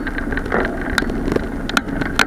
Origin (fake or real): real